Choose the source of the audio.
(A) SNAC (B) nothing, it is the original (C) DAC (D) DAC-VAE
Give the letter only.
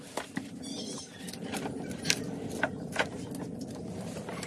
B